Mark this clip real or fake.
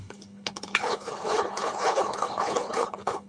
fake